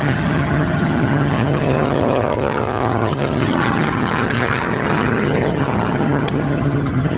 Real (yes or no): no